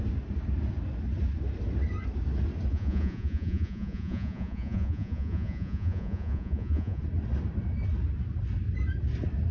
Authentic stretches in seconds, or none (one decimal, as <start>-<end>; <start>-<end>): 0.0-2.7; 7.0-9.5